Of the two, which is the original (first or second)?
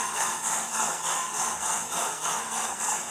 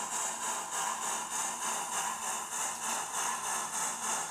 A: second